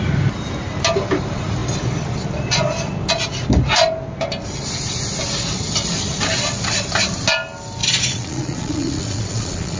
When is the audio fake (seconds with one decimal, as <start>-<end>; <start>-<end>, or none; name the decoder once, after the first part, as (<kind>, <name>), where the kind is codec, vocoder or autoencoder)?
7.8-9.8 (vocoder, Vocos)